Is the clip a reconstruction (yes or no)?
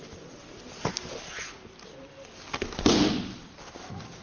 no